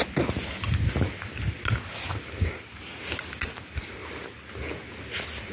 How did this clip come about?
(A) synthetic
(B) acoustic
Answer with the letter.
B